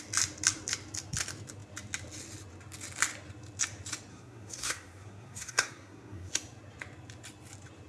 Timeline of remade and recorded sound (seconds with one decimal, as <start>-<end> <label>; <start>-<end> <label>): 0.0-4.1 recorded; 4.1-6.3 remade; 6.3-7.9 recorded